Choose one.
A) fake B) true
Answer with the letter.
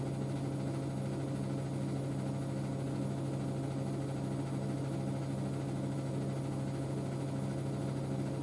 B